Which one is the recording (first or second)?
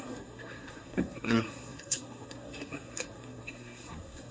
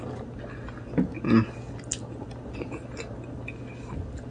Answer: second